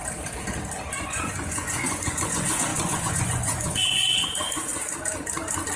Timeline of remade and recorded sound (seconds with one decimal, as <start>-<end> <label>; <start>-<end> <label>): 0.0-1.0 recorded; 1.0-4.7 remade; 4.7-5.8 recorded